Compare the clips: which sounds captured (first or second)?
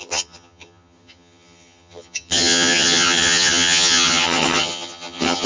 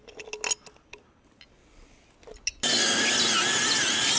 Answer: second